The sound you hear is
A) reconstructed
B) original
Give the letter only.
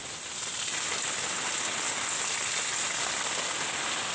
B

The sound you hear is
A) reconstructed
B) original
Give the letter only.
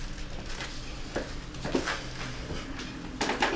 B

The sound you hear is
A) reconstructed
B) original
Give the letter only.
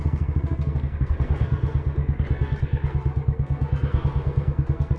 A